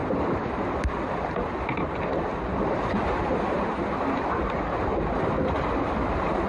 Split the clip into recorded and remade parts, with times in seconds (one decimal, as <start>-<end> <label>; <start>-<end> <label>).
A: 0.0-1.9 remade; 1.9-2.3 recorded; 2.3-2.9 remade; 2.9-6.5 recorded